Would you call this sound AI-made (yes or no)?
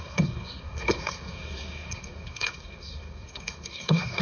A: yes